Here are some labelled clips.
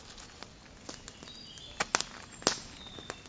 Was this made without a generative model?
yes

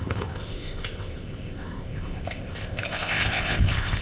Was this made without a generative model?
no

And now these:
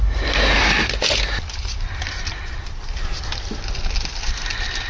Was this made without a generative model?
yes